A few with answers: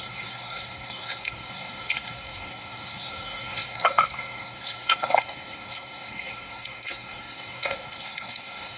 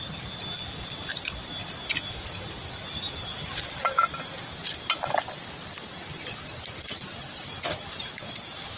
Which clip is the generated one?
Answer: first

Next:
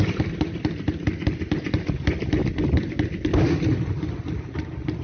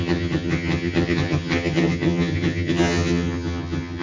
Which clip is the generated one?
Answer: second